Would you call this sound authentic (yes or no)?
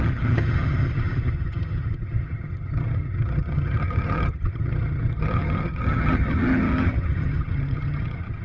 no